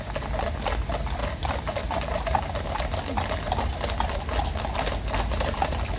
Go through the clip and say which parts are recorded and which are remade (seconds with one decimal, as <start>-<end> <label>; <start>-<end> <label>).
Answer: 0.0-6.0 recorded